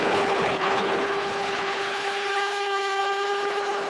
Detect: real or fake fake